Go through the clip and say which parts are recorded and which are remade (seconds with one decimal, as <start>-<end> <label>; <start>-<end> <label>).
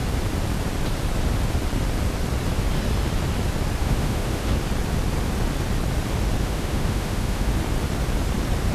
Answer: 0.0-3.8 recorded; 3.8-4.5 remade; 4.5-6.4 recorded; 6.4-7.5 remade; 7.5-8.7 recorded